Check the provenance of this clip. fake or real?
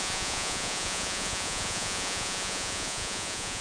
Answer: fake